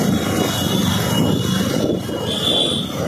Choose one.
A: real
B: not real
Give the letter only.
A